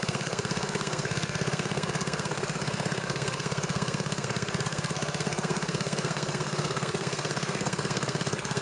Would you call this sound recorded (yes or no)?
no